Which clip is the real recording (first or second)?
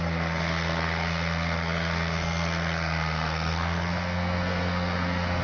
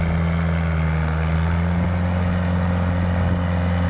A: second